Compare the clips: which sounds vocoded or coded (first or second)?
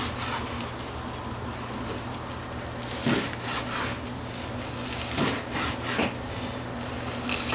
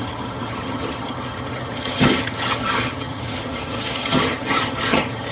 second